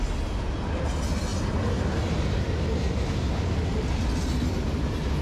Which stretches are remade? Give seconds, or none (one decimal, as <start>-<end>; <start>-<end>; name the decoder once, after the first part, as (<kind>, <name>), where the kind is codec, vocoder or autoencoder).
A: none

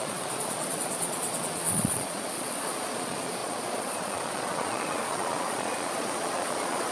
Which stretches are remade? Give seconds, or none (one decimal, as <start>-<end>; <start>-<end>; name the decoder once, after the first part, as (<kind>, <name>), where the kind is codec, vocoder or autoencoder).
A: 0.0-6.9 (vocoder, Vocos)

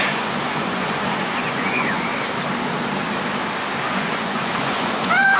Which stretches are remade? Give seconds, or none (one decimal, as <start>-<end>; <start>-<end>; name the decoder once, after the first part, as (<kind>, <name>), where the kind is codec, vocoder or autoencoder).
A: 0.0-2.1 (vocoder, Vocos); 3.9-5.4

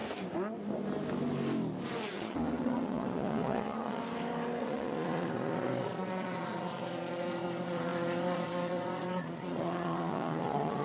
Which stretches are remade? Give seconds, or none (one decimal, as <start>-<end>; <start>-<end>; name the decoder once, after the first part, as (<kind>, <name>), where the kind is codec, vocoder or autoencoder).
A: 2.0-4.0 (vocoder, Vocos); 4.6-10.8

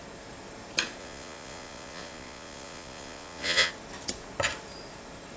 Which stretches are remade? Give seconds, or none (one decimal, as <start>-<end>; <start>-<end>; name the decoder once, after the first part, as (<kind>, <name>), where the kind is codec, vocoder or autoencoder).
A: 1.0-3.7 (vocoder, Vocos)